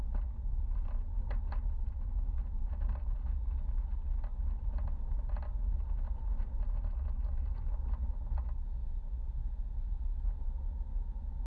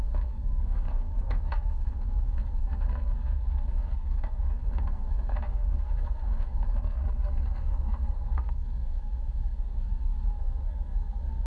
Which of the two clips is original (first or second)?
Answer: first